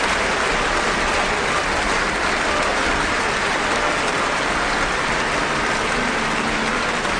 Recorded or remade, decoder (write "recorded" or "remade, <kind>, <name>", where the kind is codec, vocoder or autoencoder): recorded